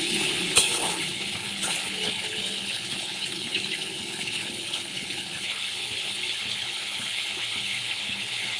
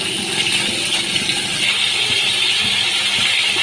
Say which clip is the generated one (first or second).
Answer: first